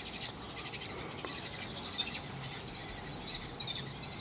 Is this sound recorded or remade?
recorded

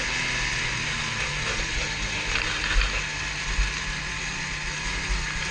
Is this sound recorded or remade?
recorded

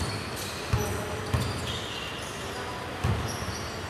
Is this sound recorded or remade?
recorded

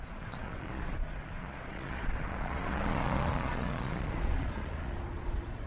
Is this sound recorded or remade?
remade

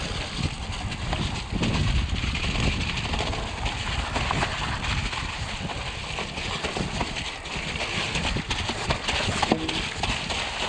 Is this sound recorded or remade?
recorded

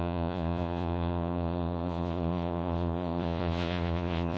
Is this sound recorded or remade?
remade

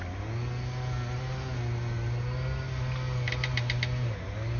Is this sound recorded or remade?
recorded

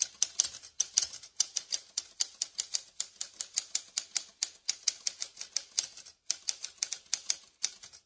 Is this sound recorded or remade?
recorded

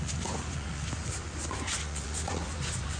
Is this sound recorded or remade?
remade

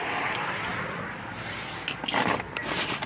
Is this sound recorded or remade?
recorded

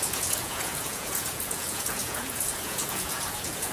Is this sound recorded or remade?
remade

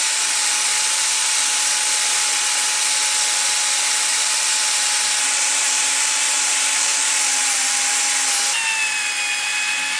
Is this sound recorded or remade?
recorded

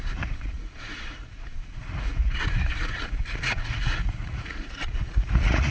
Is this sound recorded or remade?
remade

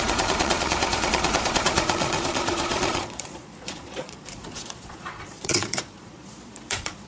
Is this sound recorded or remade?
remade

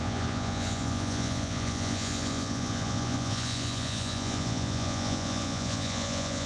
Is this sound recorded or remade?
remade